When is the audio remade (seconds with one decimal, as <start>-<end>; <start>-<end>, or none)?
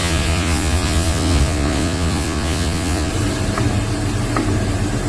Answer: 0.0-3.1